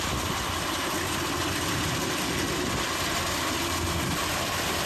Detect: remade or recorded recorded